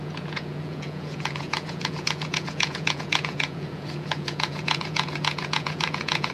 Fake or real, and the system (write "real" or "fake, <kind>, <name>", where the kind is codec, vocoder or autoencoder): fake, vocoder, Vocos